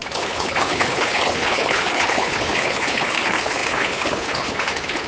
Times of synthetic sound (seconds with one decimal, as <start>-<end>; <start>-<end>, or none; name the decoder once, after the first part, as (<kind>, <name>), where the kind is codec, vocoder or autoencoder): 0.0-5.1 (codec, HILCodec)

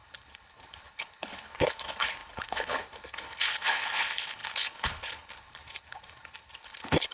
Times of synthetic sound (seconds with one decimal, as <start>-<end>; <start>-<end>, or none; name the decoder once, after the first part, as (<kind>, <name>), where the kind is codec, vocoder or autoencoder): 0.0-7.1 (codec, HILCodec)

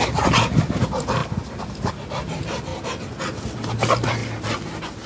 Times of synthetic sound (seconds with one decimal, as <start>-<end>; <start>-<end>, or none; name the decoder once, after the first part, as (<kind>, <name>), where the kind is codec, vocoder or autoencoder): none

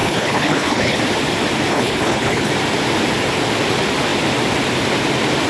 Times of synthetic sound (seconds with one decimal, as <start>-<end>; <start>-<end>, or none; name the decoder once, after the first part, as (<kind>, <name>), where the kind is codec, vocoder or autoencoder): 0.0-1.0 (codec, HILCodec); 1.7-2.5

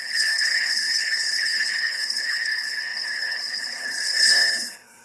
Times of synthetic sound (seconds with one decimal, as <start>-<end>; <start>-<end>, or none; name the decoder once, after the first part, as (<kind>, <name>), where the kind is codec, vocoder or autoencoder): 0.0-5.0 (codec, HILCodec)

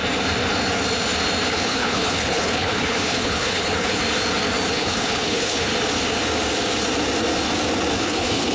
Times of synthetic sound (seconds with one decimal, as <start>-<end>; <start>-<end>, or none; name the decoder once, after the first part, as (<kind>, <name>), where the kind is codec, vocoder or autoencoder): 1.5-4.0 (codec, HILCodec); 4.7-5.7; 8.0-8.5

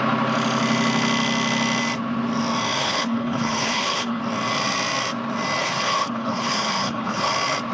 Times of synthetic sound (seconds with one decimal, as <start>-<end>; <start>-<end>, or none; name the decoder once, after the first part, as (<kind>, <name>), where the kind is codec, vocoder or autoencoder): 2.8-4.2 (codec, HILCodec); 5.6-7.3